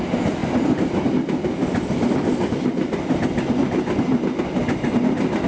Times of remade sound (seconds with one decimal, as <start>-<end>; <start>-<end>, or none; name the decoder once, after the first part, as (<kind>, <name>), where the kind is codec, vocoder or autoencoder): none